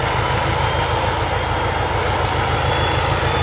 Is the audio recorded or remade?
recorded